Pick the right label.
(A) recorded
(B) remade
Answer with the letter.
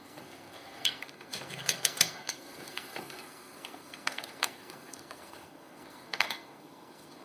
B